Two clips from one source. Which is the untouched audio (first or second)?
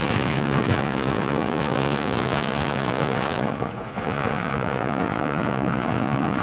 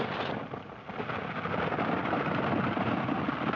second